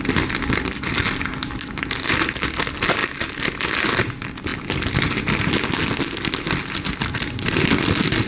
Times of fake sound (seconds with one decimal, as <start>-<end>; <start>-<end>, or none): none